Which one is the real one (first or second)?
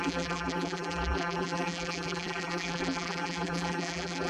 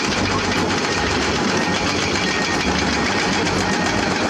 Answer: second